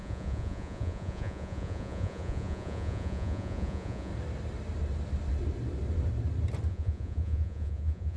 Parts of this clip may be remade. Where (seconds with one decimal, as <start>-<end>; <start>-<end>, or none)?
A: 0.0-4.1; 6.7-8.2